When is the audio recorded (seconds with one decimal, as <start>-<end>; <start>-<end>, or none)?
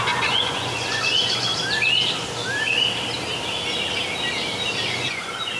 1.5-4.9